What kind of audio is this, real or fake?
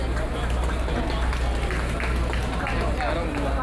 real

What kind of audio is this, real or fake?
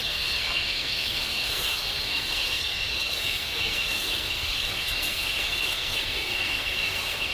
fake